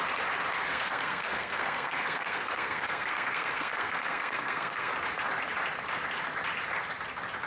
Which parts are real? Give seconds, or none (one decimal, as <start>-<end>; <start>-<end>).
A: 0.0-0.7; 4.9-7.5